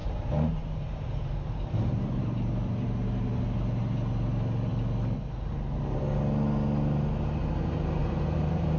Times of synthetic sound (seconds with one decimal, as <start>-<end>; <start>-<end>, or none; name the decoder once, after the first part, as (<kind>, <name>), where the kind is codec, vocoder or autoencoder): 0.0-2.2 (vocoder, BigVGAN v2); 8.0-8.8